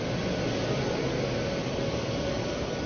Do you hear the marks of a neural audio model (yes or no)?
no